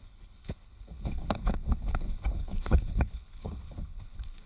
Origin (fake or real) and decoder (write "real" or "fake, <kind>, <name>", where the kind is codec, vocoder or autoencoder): fake, codec, HILCodec